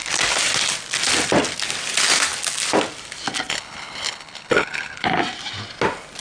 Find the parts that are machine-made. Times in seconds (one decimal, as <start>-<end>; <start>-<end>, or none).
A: 3.5-5.2